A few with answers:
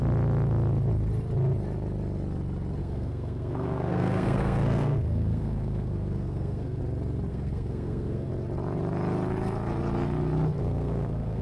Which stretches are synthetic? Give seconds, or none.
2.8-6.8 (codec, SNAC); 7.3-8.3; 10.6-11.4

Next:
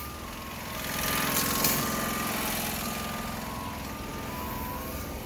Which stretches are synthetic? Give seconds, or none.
none

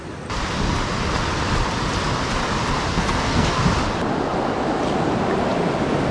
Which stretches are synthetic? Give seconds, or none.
2.9-3.6 (codec, SNAC)

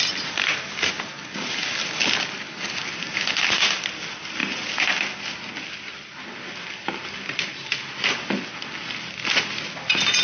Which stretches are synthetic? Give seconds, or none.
none

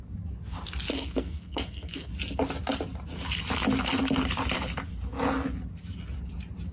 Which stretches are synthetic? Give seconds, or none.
0.9-2.1 (codec, SNAC)